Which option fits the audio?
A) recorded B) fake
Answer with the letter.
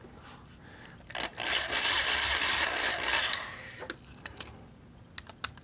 A